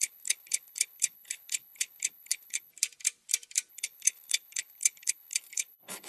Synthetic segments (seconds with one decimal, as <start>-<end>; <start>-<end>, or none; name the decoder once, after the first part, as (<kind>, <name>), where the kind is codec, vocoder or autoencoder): 0.0-2.7 (codec, HILCodec); 3.7-6.1